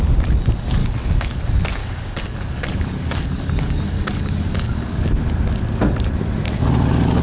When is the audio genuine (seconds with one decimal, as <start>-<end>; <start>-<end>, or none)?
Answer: 0.0-0.8; 1.4-1.8; 5.1-7.2